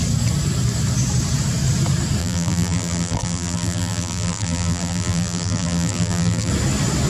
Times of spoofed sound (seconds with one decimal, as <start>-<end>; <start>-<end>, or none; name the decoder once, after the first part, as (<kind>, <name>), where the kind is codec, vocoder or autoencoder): 2.2-6.5 (vocoder, BigVGAN v2)